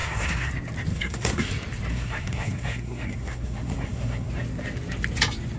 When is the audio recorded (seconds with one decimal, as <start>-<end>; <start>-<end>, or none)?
0.5-0.9; 1.5-1.9; 4.3-5.6